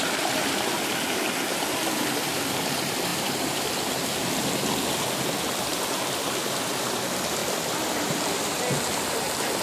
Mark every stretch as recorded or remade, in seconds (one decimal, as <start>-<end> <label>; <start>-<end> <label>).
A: 0.0-3.1 recorded; 3.1-3.7 remade; 3.7-5.7 recorded; 5.7-6.9 remade; 6.9-7.4 recorded; 7.4-8.6 remade; 8.6-9.6 recorded